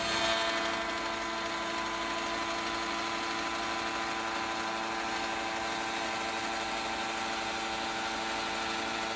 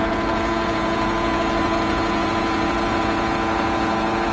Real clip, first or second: first